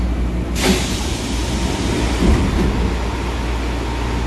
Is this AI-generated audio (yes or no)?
no